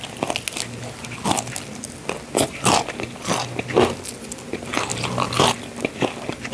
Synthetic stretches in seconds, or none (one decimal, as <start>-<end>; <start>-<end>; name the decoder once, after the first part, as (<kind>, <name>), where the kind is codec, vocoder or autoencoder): none